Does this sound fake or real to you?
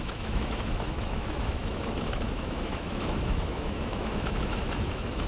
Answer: fake